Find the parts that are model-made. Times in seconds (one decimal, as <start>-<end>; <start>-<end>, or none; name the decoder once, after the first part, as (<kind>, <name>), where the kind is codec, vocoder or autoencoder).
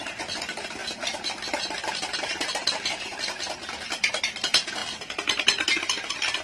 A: none